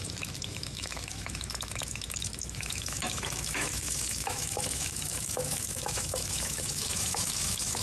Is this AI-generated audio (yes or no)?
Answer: yes